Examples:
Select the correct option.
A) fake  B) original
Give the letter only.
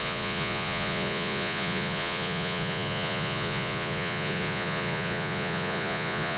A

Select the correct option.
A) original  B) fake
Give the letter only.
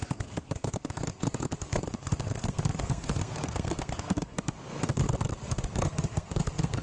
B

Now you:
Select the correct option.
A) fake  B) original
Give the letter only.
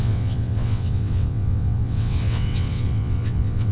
A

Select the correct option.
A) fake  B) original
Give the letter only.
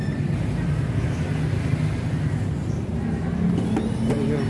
B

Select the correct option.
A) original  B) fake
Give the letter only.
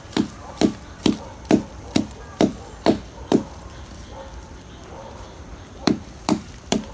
B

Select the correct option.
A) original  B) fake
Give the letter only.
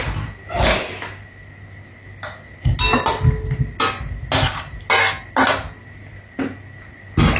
A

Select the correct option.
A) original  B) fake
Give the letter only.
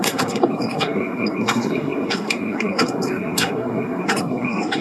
B